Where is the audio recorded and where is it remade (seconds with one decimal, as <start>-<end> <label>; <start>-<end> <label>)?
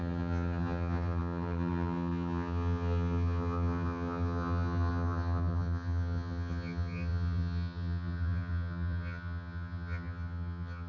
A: 0.0-10.9 remade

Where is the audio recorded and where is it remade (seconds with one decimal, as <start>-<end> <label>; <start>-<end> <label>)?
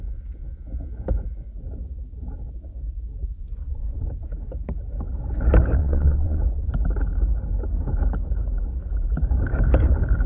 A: 0.0-5.8 recorded; 5.8-6.4 remade; 6.4-10.3 recorded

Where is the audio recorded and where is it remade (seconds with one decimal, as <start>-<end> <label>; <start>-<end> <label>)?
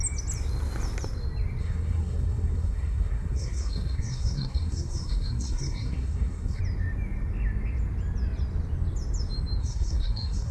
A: 0.0-1.6 recorded; 1.6-6.6 remade; 6.6-9.6 recorded; 9.6-10.5 remade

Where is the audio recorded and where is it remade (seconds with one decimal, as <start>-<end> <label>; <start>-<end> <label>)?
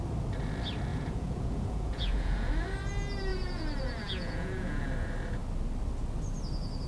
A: 0.0-0.9 recorded; 0.9-2.5 remade; 2.5-3.3 recorded; 3.3-4.7 remade; 4.7-6.9 recorded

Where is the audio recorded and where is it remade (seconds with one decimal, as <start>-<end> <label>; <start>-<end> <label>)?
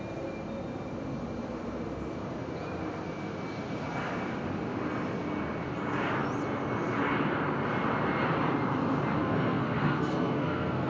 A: 0.0-9.2 recorded; 9.2-10.9 remade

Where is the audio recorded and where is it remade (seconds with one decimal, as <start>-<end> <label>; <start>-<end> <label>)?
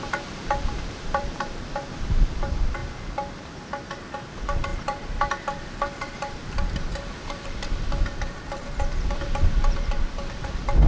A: 0.0-2.8 remade; 2.8-4.3 recorded; 4.3-10.9 remade